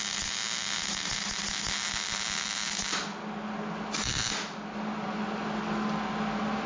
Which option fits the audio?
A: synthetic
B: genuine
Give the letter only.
B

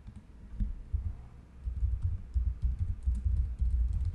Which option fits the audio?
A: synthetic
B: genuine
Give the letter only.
B